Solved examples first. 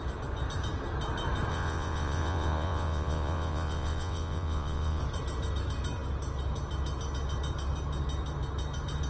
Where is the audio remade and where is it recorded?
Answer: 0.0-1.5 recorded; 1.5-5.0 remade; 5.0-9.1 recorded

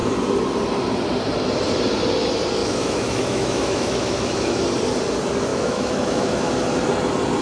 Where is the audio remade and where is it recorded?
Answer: 0.0-2.6 recorded; 2.6-4.6 remade; 4.6-5.5 recorded; 5.5-6.5 remade; 6.5-7.4 recorded